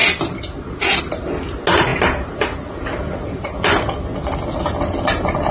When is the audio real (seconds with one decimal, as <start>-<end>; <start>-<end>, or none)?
0.0-5.5